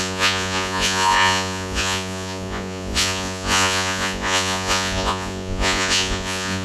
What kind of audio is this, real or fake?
fake